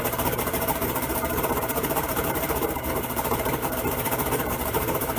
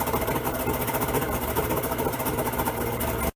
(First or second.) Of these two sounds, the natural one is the second